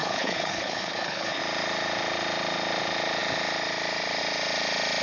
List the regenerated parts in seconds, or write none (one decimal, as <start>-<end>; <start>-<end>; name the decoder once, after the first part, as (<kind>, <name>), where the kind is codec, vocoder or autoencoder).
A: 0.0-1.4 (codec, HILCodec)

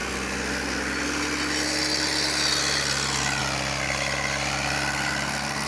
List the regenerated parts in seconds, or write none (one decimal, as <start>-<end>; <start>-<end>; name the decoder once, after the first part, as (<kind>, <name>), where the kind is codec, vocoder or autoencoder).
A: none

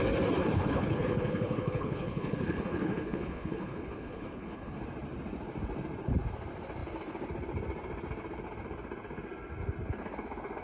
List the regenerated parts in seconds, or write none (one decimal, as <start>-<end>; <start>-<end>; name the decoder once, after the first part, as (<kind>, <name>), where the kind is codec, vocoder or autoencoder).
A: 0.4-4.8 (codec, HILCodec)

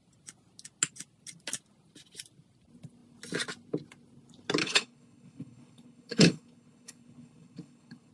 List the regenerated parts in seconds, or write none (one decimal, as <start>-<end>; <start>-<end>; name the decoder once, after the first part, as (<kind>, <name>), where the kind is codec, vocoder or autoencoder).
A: 4.6-8.1 (codec, HILCodec)

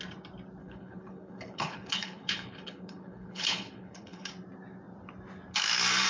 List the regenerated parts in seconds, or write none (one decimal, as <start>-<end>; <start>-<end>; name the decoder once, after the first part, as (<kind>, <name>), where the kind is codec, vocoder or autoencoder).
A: 0.6-4.3 (codec, HILCodec)

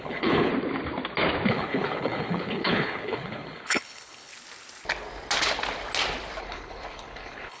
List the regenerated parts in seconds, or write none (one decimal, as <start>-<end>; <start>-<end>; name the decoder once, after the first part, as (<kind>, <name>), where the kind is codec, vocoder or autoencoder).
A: 0.0-0.5 (codec, HILCodec); 1.5-4.3; 6.4-7.6

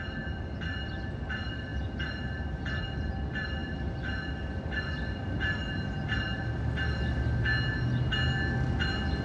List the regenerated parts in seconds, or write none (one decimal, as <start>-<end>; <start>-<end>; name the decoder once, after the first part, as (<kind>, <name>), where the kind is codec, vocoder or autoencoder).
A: none